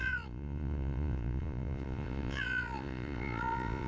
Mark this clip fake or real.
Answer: fake